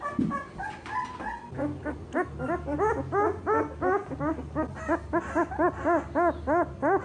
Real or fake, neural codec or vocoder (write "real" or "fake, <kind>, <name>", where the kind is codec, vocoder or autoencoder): real